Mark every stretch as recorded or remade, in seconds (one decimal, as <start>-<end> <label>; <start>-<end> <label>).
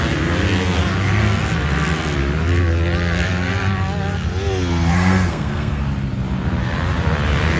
0.0-4.9 recorded; 4.9-5.8 remade; 5.8-7.6 recorded